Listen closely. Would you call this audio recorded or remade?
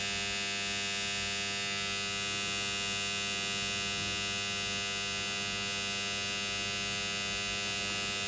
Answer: recorded